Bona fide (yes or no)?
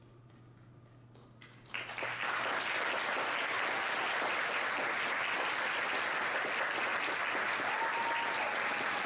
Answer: yes